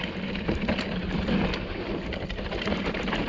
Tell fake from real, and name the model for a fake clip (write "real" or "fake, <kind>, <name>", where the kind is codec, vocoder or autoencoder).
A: real